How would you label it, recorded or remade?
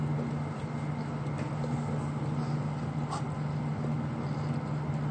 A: recorded